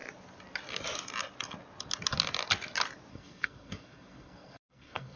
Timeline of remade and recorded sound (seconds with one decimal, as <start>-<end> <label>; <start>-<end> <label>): 0.0-3.1 recorded; 3.1-5.2 remade